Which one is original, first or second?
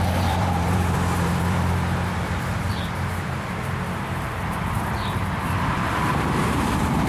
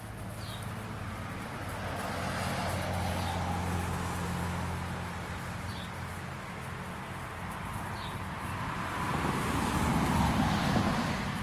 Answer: second